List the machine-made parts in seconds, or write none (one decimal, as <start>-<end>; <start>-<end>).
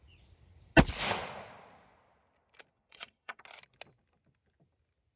2.7-3.4